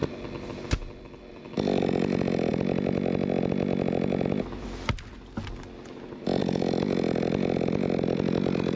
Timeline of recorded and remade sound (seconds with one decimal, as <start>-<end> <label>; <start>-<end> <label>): 0.0-1.2 recorded; 1.2-2.5 remade; 2.5-6.4 recorded; 6.4-8.8 remade